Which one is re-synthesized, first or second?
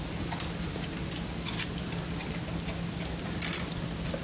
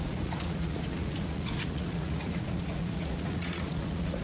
second